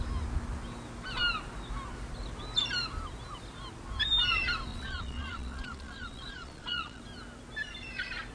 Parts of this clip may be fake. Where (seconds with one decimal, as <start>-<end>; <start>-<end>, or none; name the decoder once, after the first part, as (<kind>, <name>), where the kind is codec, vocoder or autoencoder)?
4.7-7.0 (vocoder, Vocos)